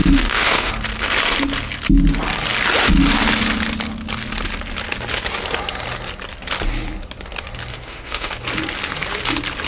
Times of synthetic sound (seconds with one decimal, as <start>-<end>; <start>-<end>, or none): 0.0-0.7; 7.7-8.3

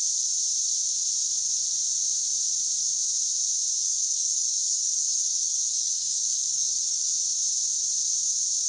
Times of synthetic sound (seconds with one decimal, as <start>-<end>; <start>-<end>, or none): 3.8-7.1

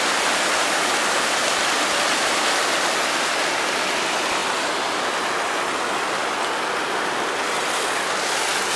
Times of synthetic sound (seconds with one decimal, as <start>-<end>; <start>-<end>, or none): none

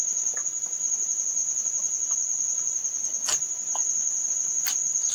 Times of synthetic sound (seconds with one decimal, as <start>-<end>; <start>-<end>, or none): none